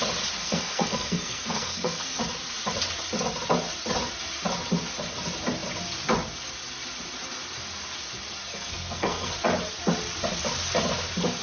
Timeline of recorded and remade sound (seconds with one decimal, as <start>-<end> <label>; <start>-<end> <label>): 0.0-0.4 recorded; 0.4-2.2 remade; 2.2-8.5 recorded; 8.5-9.3 remade; 9.3-11.4 recorded